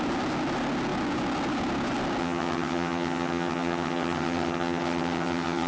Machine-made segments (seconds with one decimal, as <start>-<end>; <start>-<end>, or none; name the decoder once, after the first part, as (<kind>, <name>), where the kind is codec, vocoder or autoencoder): 2.2-5.7 (vocoder, HiFi-GAN)